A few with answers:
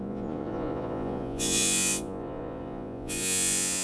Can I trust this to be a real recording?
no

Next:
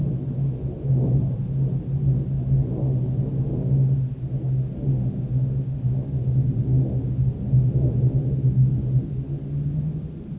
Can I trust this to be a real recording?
yes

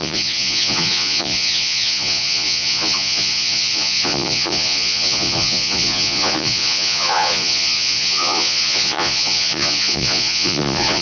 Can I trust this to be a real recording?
no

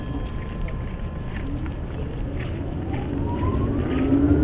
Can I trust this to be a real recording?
yes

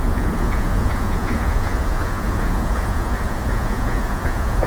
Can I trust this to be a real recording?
no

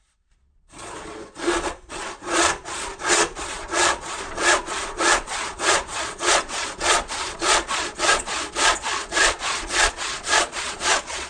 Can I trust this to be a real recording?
no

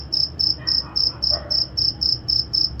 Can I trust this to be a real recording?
yes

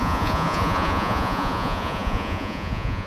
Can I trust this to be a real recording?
no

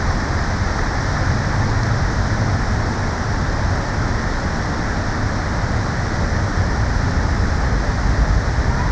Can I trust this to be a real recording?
yes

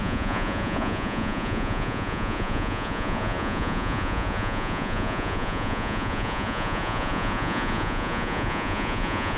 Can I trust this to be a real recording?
no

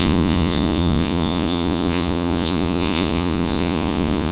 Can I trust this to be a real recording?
no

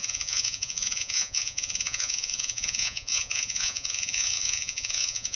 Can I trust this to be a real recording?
no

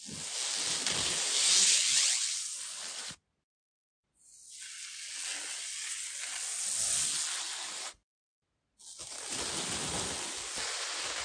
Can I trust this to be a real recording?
yes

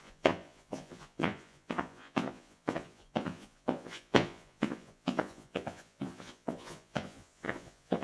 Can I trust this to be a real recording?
no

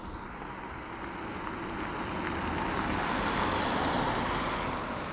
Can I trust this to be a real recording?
yes